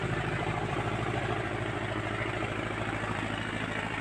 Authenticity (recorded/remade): remade